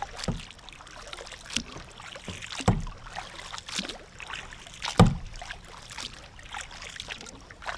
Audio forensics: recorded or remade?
recorded